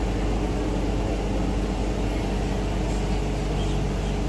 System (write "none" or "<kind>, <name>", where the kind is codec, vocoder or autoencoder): none